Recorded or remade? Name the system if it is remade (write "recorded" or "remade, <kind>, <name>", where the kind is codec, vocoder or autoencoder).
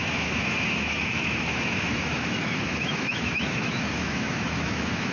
remade, autoencoder, DAC-VAE